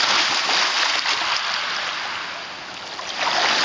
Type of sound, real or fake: real